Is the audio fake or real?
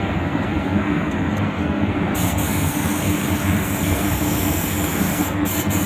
fake